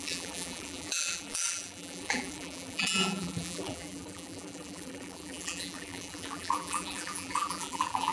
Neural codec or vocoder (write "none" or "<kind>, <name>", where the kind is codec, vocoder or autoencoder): vocoder, BigVGAN v2